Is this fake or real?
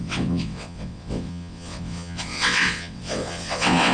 fake